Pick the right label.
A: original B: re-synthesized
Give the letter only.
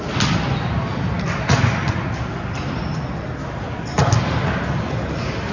A